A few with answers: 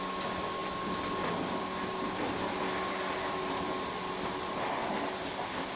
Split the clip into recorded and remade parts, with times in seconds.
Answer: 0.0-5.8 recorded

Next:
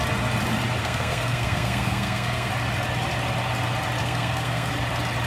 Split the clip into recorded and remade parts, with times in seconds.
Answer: 0.0-0.8 recorded; 0.8-2.5 remade; 2.5-4.0 recorded; 4.0-4.7 remade; 4.7-5.3 recorded

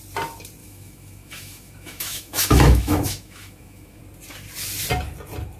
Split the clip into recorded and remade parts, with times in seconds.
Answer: 0.0-0.6 recorded; 0.6-4.0 remade; 4.0-5.6 recorded